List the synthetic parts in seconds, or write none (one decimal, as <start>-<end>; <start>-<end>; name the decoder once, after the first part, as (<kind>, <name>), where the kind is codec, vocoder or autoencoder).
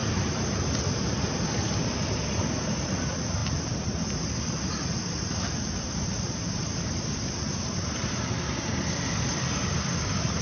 0.0-10.4 (vocoder, BigVGAN v2)